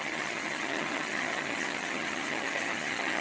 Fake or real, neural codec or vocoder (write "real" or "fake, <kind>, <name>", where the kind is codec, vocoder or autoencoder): fake, vocoder, HiFi-GAN